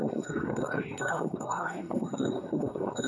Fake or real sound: fake